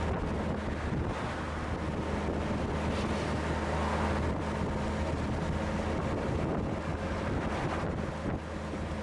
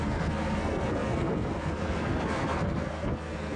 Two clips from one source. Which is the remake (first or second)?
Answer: second